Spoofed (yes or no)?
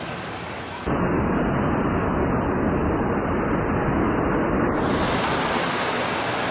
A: no